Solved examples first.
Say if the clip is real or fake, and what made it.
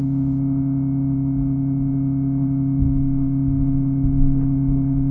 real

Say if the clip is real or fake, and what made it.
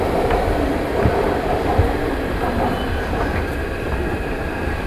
fake, vocoder, BigVGAN v2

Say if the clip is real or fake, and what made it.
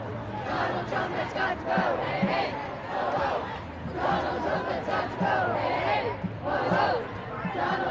fake, vocoder, BigVGAN v2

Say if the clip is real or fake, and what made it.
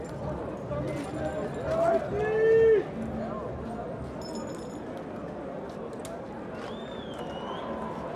real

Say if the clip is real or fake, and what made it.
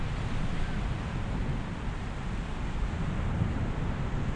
real